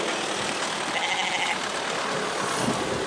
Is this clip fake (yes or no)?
no